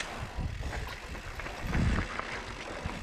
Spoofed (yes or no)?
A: no